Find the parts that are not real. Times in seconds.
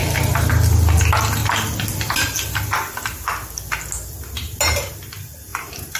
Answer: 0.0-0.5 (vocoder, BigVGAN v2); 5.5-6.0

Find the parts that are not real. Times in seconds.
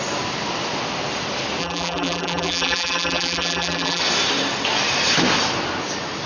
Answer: 1.6-4.0 (vocoder, BigVGAN v2)